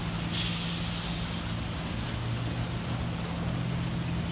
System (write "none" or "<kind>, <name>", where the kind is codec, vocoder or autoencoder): none